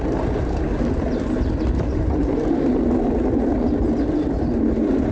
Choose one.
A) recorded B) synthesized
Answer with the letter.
A